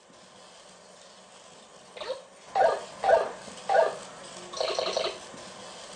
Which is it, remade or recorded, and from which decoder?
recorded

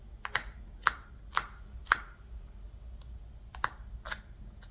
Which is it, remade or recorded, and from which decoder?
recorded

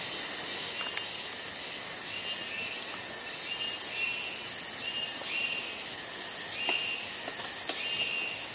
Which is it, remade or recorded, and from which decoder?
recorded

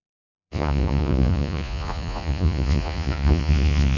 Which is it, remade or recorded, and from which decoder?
remade, vocoder, Vocos